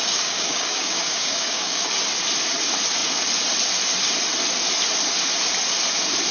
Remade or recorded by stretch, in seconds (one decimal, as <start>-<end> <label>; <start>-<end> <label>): 0.0-1.9 remade; 1.9-6.3 recorded